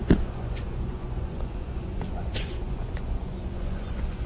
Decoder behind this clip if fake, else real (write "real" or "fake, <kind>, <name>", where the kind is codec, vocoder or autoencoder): fake, vocoder, Vocos